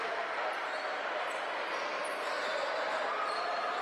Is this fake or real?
real